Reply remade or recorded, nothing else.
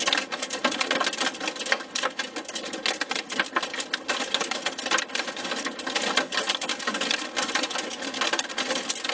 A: recorded